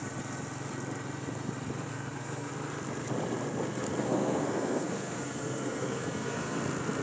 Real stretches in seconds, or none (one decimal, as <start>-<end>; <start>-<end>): 0.0-1.9; 2.5-4.0; 6.6-7.0